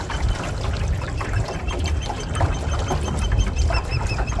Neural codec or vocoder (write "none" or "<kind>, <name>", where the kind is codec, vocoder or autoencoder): none